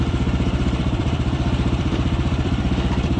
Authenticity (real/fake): fake